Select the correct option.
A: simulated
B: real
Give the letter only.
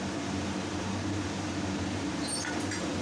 A